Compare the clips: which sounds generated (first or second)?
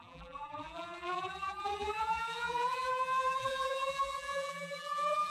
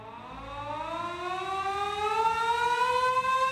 first